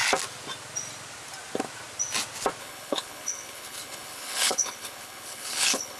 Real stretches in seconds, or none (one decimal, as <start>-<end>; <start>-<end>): 0.0-2.6